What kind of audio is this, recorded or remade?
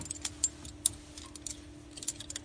recorded